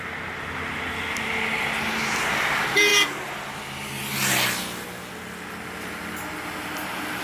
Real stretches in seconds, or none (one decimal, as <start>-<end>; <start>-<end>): 0.0-7.2